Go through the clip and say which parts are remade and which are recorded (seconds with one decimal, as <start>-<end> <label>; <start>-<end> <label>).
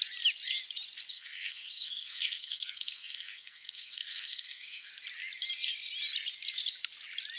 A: 0.0-1.1 recorded; 1.1-4.9 remade; 4.9-7.4 recorded